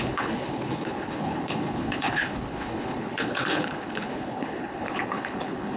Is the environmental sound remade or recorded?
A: remade